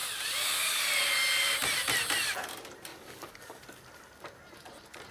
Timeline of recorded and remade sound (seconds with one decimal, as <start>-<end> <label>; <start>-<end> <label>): 0.0-2.9 recorded; 2.9-3.6 remade; 3.6-5.1 recorded